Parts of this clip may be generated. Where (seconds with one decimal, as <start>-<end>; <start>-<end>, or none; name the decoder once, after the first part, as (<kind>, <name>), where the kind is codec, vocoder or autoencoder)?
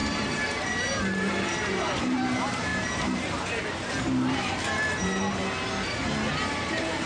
0.0-5.4 (vocoder, BigVGAN v2); 6.5-7.1